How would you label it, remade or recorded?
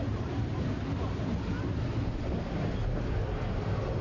recorded